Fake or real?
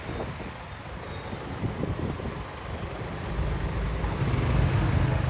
real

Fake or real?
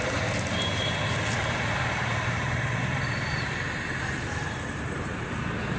fake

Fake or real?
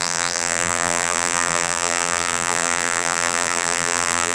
fake